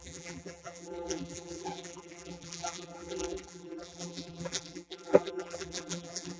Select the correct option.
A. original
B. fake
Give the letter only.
B